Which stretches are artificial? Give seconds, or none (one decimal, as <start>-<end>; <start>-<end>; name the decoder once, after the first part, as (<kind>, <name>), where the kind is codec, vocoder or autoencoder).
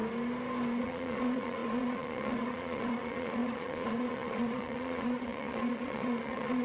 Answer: 0.8-6.6 (vocoder, Vocos)